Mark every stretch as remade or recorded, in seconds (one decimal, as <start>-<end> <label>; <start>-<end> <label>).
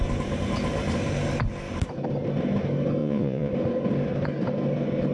0.0-3.0 recorded; 3.0-3.5 remade; 3.5-5.1 recorded